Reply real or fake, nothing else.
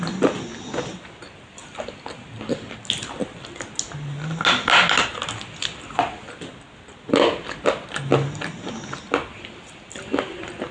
real